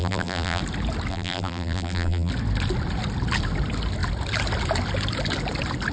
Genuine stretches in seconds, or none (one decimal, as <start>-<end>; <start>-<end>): 0.6-1.1; 2.3-5.9